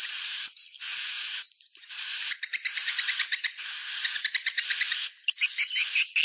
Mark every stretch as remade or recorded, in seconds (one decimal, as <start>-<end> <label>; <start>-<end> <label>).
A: 0.0-0.9 recorded; 0.9-3.6 remade; 3.6-6.2 recorded